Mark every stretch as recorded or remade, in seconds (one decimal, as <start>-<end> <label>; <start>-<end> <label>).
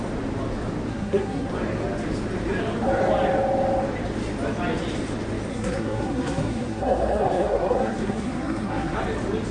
0.0-0.9 recorded; 0.9-1.5 remade; 1.5-5.5 recorded; 5.5-9.0 remade; 9.0-9.5 recorded